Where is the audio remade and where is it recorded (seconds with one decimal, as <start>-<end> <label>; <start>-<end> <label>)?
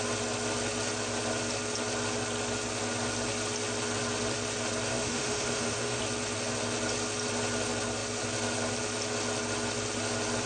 0.0-4.9 recorded; 4.9-6.0 remade; 6.0-10.5 recorded